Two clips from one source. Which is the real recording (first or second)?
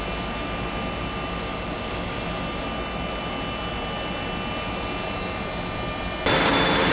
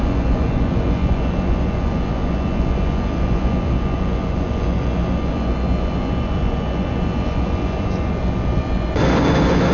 first